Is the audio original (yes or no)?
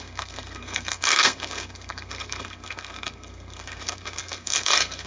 no